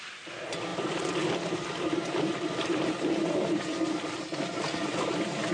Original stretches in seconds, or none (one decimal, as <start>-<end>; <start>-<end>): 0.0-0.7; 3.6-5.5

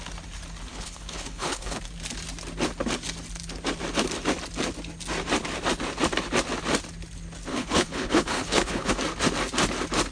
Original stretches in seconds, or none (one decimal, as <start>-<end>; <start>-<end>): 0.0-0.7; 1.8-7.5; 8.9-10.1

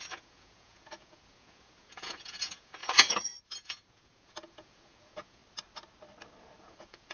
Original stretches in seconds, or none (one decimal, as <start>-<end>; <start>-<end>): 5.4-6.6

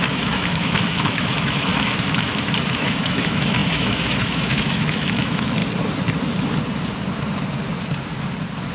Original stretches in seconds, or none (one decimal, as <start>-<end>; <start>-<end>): 5.6-8.7

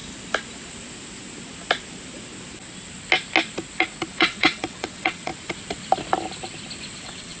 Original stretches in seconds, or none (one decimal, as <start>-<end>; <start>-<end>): 0.0-4.1; 5.3-7.0

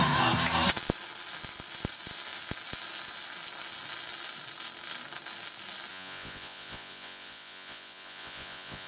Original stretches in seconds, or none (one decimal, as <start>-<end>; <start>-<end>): 0.0-5.9